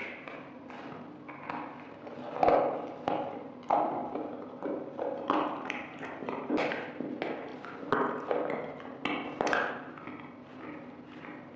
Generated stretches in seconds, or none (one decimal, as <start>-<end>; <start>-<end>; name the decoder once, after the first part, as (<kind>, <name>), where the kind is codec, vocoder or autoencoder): 0.0-0.7 (vocoder, BigVGAN v2); 4.0-6.5